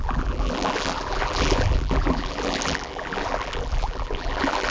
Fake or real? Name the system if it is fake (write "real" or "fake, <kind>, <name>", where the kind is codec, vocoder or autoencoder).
fake, vocoder, BigVGAN v2